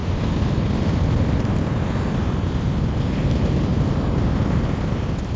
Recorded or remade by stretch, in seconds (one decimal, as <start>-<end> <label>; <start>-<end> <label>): 0.0-5.4 recorded

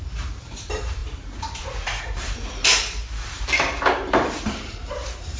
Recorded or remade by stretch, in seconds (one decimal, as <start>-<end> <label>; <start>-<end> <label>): 0.0-5.4 remade

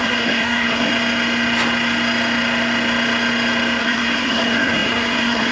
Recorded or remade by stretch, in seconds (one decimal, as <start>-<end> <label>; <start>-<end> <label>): 0.0-0.9 remade; 0.9-3.8 recorded; 3.8-5.5 remade

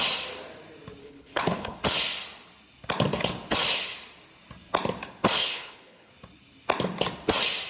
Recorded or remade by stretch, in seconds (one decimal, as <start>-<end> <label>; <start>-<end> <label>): 0.0-1.0 recorded; 1.0-1.8 remade; 1.8-5.4 recorded; 5.4-6.1 remade; 6.1-7.7 recorded

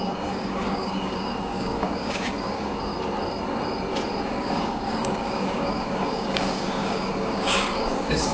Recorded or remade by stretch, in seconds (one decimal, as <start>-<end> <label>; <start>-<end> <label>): 0.0-2.9 remade; 2.9-4.3 recorded; 4.3-8.3 remade

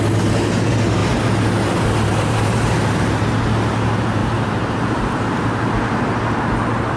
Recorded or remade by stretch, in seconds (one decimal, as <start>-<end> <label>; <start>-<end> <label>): 0.0-2.1 recorded; 2.1-3.3 remade; 3.3-4.2 recorded; 4.2-5.7 remade; 5.7-7.0 recorded

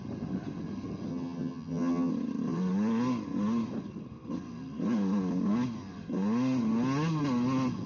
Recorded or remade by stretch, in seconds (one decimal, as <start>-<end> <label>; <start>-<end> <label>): 0.0-1.1 recorded; 1.1-2.1 remade; 2.1-7.9 recorded

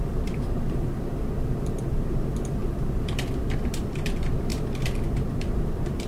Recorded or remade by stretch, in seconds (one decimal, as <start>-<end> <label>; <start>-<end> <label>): 0.0-6.1 remade